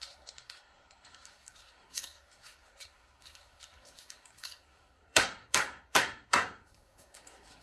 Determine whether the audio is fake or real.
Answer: fake